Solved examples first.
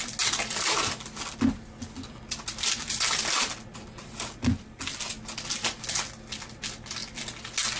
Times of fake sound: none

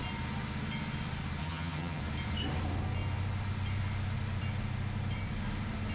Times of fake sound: 1.4-2.0 (vocoder, HiFi-GAN)

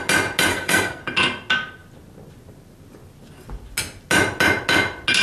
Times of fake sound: 0.5-1.0 (codec, SNAC)